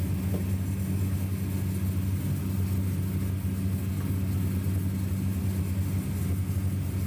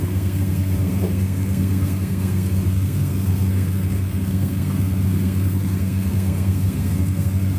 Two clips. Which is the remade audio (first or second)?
second